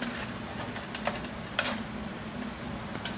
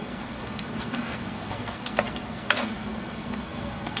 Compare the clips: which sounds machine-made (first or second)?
second